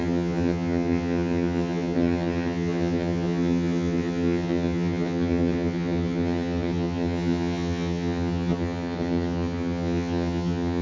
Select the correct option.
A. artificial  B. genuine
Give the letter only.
A